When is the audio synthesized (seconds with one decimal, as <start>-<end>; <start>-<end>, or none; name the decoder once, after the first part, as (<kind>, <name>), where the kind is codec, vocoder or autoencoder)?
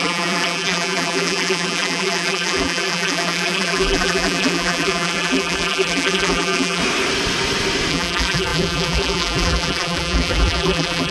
0.0-6.8 (vocoder, BigVGAN v2); 7.9-11.1